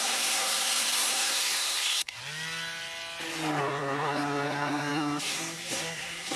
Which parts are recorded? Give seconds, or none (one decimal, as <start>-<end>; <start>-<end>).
2.2-3.6